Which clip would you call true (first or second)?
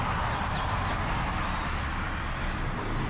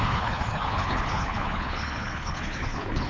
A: first